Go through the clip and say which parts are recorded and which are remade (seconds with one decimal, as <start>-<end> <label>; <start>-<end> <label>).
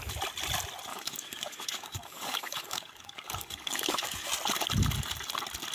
0.0-0.9 recorded; 0.9-4.3 remade; 4.3-5.7 recorded